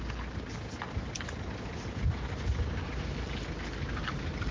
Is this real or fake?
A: real